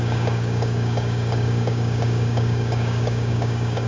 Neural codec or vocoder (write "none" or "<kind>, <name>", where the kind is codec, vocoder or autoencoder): codec, DAC